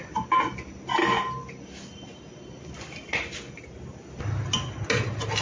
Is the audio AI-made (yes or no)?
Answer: no